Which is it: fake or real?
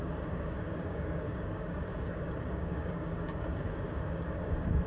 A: fake